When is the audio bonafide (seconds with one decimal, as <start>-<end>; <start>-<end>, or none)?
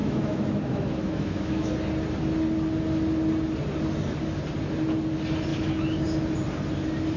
1.7-7.2